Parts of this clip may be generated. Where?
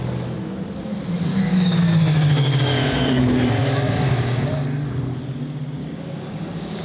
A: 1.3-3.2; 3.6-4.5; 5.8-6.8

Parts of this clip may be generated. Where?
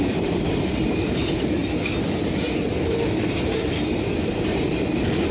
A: none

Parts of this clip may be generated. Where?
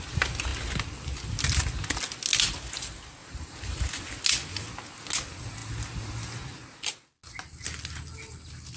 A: 3.2-3.8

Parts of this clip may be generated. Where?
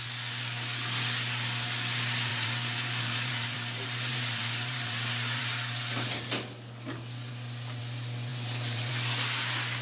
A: 2.3-5.4; 8.3-8.9